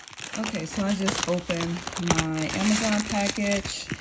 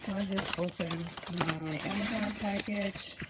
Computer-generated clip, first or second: second